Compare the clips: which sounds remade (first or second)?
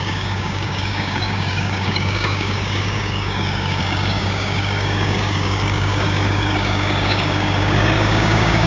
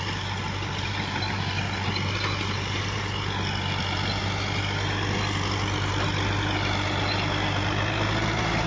first